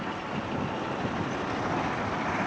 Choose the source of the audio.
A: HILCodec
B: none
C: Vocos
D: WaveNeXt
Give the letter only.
B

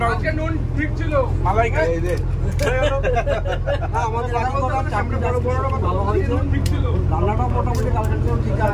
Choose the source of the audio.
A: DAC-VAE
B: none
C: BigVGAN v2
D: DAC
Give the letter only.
B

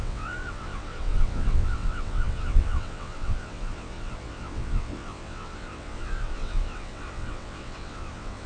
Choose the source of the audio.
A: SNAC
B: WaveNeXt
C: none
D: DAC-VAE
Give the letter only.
B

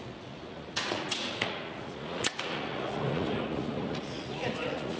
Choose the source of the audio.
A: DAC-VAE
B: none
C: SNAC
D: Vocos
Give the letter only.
D